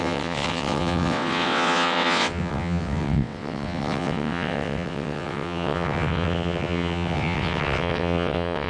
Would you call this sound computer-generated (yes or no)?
yes